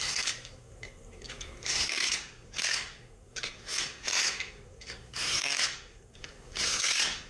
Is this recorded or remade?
remade